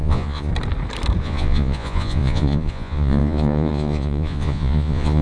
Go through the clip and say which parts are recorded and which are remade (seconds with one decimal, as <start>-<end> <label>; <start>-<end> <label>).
0.0-0.5 remade; 0.5-1.2 recorded; 1.2-5.2 remade